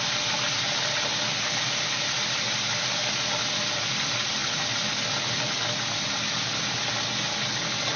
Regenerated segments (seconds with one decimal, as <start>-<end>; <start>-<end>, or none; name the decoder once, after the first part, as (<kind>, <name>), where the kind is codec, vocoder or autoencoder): none